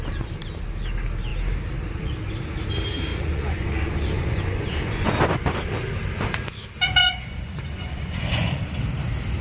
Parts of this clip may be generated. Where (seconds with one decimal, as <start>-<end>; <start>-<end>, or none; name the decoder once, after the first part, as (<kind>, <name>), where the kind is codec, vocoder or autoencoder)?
3.1-5.1 (vocoder, Vocos); 7.0-8.8